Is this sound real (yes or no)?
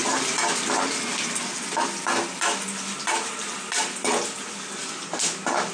yes